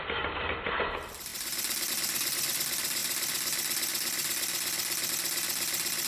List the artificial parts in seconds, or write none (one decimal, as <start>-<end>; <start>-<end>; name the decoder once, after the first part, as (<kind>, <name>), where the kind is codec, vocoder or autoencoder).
none